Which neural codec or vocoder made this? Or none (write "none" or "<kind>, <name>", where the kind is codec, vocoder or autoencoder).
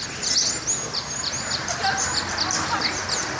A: none